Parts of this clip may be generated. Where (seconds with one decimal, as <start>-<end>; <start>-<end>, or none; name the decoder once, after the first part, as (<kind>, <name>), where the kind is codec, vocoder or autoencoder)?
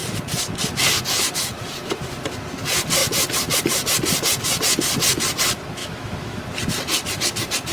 5.8-6.4 (autoencoder, DAC-VAE)